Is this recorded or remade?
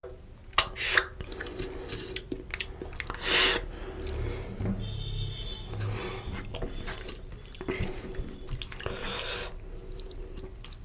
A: recorded